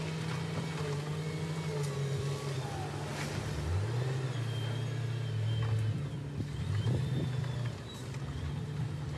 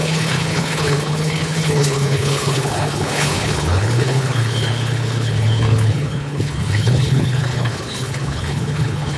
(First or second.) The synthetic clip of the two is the second